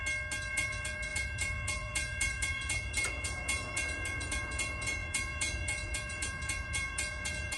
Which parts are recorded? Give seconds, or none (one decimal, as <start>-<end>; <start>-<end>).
0.0-0.5

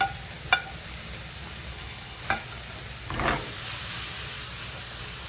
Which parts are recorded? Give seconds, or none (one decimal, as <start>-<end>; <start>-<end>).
0.0-1.7; 2.2-5.3

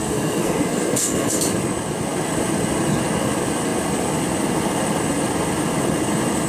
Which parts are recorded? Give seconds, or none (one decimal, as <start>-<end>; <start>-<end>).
1.4-6.5

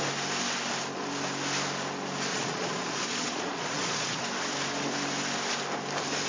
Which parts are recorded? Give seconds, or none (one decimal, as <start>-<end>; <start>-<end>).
0.0-2.3; 4.2-6.3

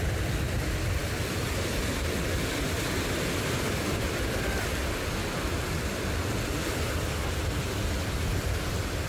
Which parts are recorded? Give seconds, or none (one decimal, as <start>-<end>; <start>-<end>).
0.0-9.1

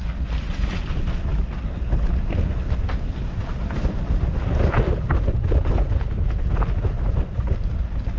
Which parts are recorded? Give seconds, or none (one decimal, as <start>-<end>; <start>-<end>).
0.0-8.2

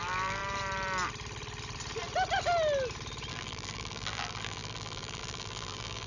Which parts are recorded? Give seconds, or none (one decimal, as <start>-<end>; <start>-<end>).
0.4-3.3